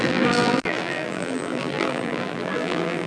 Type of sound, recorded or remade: remade